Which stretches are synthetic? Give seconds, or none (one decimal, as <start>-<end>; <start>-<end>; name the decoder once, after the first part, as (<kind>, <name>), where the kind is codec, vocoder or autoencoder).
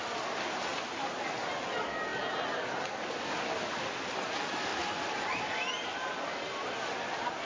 2.1-3.0 (vocoder, BigVGAN v2); 4.7-6.3